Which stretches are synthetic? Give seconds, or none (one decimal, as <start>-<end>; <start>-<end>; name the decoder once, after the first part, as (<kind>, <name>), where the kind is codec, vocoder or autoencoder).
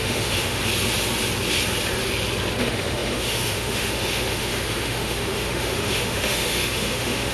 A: 0.0-0.6 (autoencoder, DAC-VAE); 2.6-7.3